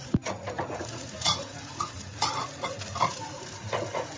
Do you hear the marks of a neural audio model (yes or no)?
yes